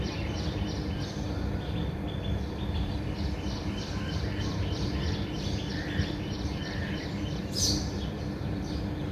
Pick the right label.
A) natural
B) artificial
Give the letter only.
B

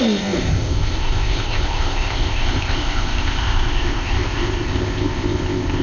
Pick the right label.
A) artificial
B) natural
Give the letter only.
A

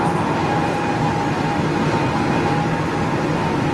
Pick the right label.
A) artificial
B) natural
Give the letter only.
B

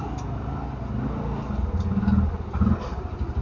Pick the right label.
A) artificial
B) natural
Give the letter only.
B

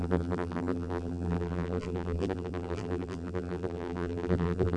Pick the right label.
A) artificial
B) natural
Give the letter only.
A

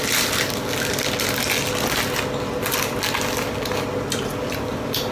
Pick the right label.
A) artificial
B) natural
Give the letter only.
B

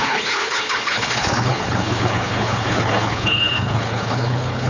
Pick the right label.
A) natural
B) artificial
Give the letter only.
B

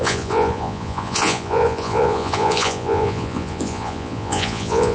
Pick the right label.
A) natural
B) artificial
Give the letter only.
B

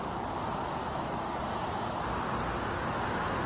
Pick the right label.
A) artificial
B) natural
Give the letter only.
B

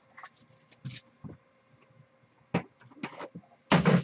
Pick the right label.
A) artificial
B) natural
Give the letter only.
B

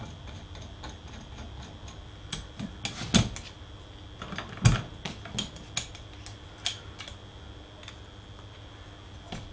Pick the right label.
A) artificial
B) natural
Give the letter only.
B